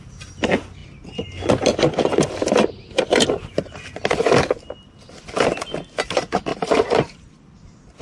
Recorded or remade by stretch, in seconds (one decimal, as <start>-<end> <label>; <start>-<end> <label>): 0.0-6.5 recorded; 6.5-7.3 remade; 7.3-8.0 recorded